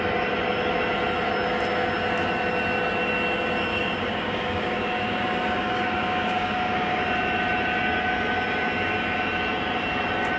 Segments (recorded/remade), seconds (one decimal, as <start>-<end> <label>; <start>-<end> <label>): 0.0-3.7 recorded; 3.7-7.0 remade; 7.0-10.4 recorded